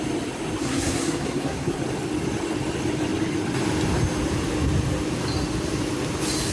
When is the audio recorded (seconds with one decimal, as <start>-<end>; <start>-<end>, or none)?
0.0-0.6; 1.8-6.5

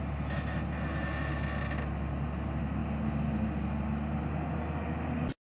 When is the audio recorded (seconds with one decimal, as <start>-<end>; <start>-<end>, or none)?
0.0-5.6

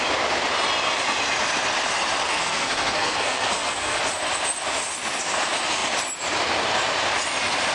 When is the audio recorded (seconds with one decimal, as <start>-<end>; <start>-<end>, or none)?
0.0-2.3; 4.0-7.7

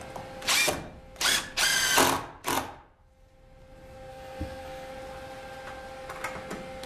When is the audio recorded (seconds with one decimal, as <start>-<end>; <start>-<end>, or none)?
0.0-4.1; 4.9-6.9

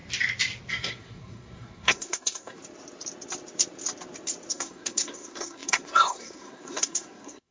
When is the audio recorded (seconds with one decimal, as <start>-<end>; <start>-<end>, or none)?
0.0-0.7; 2.6-4.5

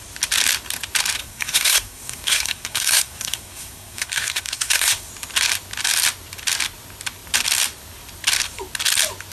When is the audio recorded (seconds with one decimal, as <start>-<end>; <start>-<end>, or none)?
0.0-1.2; 5.1-9.3

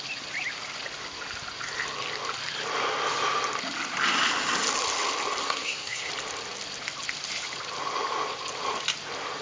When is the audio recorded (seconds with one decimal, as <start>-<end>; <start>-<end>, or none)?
0.0-5.4; 6.1-9.4

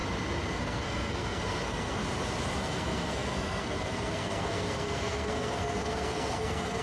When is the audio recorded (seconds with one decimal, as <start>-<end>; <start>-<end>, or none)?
0.0-0.6; 2.0-2.6